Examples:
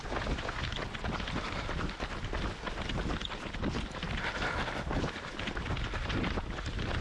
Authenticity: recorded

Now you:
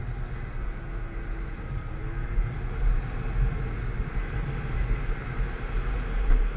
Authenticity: recorded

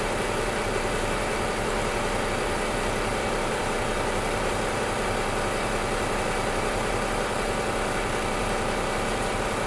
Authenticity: remade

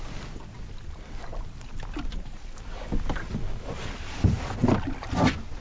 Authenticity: recorded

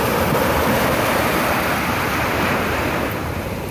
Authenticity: recorded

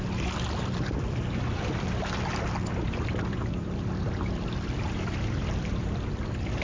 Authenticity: remade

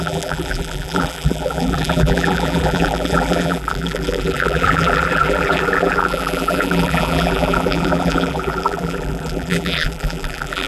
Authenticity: remade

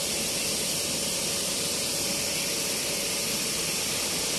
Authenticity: remade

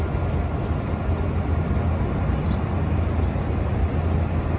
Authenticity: recorded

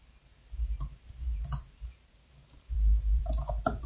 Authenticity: remade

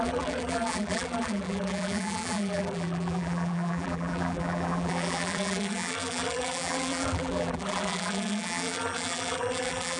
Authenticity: remade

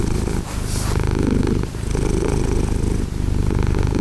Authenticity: recorded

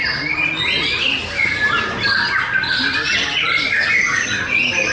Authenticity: recorded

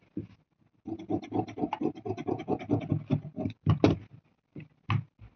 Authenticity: recorded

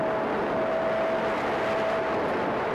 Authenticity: recorded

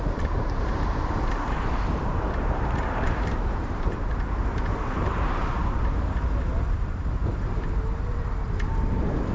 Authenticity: remade